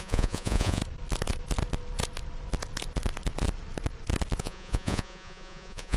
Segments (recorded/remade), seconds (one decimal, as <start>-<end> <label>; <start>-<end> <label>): 0.0-0.8 remade; 0.8-4.4 recorded; 4.4-6.0 remade